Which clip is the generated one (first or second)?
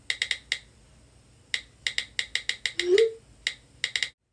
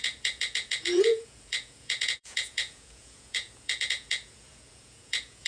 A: second